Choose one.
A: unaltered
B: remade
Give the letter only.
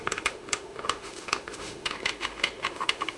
B